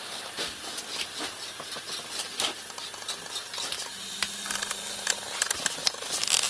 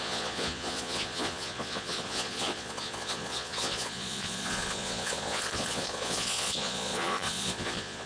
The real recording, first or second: first